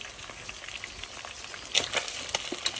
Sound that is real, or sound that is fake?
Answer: real